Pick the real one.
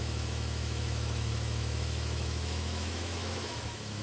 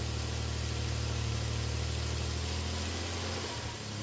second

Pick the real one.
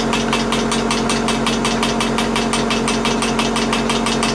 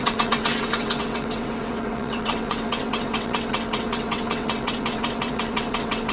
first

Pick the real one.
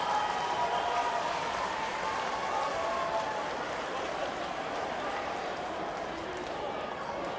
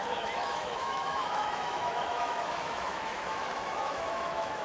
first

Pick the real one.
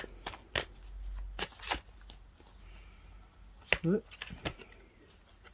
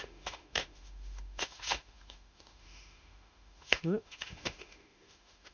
first